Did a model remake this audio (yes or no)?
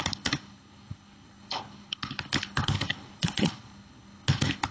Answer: yes